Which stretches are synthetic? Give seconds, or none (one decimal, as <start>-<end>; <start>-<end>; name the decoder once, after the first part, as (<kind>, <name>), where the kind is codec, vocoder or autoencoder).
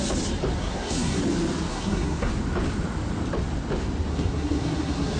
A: 0.6-1.2 (codec, SNAC); 1.7-2.3; 4.1-5.2